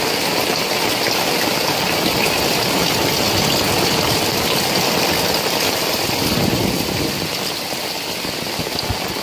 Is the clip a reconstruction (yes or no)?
no